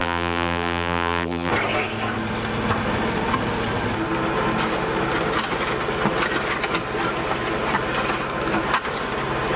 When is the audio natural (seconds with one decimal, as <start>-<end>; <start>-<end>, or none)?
1.5-9.6